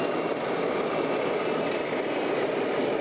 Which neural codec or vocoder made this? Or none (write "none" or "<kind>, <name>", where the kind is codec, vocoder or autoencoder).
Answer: none